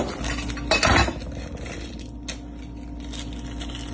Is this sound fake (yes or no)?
no